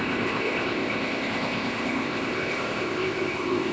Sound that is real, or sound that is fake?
fake